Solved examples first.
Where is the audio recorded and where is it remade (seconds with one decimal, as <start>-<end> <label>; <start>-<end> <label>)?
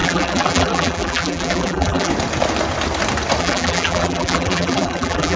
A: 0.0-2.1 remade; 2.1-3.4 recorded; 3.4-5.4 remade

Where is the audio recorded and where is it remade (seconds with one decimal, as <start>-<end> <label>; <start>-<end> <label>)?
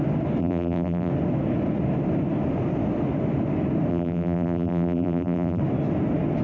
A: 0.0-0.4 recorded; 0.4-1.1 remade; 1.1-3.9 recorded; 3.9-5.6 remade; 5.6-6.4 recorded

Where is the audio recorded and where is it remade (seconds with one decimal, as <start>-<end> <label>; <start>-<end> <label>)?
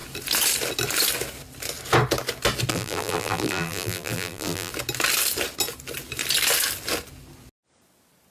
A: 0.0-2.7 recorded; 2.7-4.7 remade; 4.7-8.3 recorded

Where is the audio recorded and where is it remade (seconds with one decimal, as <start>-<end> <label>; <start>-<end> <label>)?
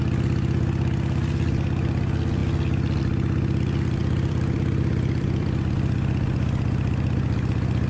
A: 0.0-4.0 recorded; 4.0-5.7 remade; 5.7-7.9 recorded